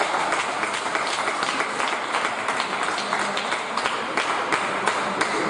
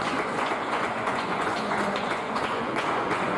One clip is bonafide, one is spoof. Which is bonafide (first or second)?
first